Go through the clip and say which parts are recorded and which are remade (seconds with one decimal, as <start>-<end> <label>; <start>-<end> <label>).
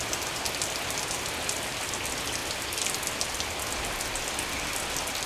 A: 0.0-5.3 recorded